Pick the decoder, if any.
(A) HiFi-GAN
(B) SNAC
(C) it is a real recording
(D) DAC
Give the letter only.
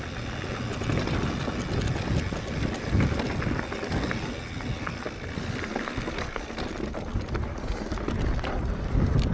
C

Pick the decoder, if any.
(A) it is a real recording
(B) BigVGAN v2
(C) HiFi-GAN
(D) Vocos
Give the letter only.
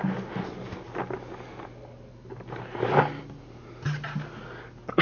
A